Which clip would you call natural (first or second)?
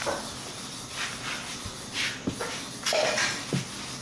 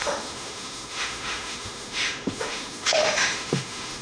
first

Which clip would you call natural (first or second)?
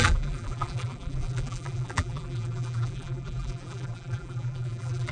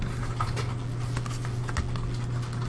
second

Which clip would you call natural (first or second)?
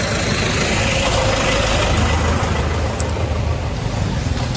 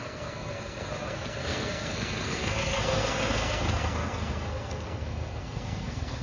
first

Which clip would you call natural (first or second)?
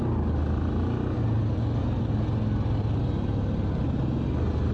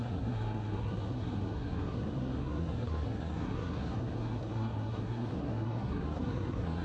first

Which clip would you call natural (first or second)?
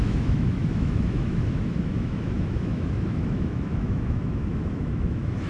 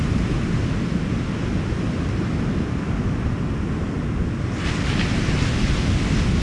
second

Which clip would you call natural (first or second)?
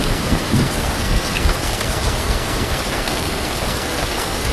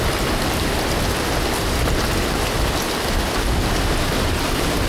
second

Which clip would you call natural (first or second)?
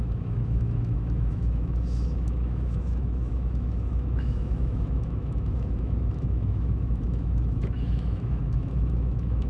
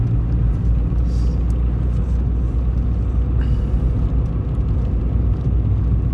second